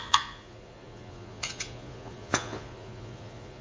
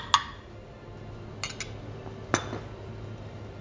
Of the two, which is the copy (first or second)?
first